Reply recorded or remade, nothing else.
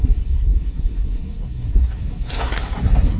remade